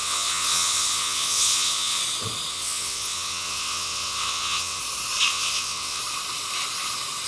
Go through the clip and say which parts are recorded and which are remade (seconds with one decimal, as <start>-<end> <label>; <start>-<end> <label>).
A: 0.0-2.0 remade; 2.0-2.5 recorded; 2.5-4.8 remade; 4.8-5.3 recorded; 5.3-6.0 remade; 6.0-7.3 recorded